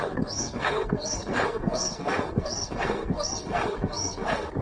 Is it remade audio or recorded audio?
remade